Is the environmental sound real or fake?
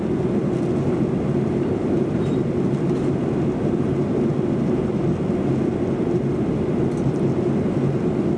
real